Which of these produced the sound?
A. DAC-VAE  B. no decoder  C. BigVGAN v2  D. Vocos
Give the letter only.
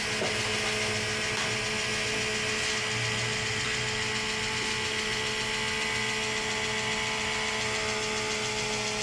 B